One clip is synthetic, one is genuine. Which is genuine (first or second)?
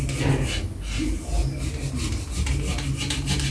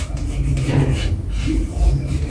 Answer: first